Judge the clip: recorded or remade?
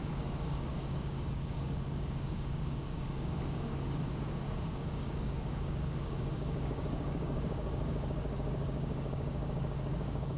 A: remade